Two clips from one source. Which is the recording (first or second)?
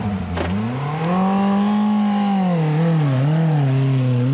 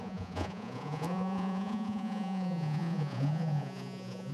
first